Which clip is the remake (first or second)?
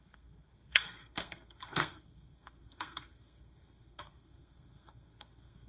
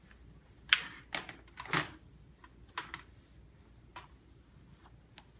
first